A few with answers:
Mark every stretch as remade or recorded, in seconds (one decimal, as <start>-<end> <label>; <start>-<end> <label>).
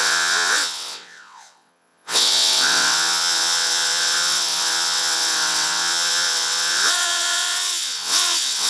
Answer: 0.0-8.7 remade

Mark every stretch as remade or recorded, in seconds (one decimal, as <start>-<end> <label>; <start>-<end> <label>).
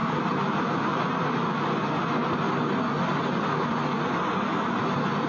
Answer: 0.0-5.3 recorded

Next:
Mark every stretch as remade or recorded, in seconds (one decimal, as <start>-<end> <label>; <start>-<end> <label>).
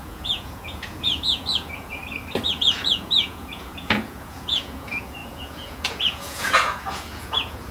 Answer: 0.0-2.0 remade; 2.0-2.6 recorded; 2.6-7.7 remade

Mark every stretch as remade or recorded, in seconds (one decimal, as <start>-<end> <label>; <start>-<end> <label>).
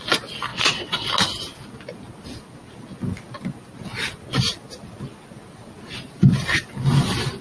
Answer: 0.0-0.5 recorded; 0.5-1.1 remade; 1.1-7.4 recorded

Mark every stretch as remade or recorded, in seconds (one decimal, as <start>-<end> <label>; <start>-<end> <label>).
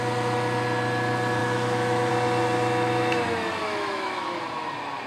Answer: 0.0-1.4 recorded; 1.4-2.1 remade; 2.1-3.6 recorded; 3.6-4.4 remade; 4.4-5.1 recorded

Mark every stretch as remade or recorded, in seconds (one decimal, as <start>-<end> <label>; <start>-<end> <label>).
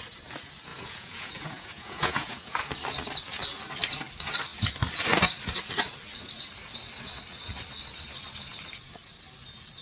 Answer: 0.0-0.7 recorded; 0.7-2.6 remade; 2.6-9.8 recorded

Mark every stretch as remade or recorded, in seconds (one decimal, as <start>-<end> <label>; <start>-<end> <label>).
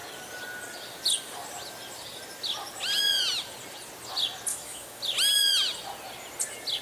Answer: 0.0-4.5 recorded; 4.5-5.0 remade; 5.0-6.8 recorded